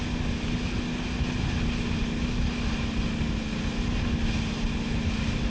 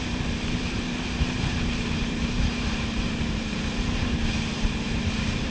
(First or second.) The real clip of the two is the first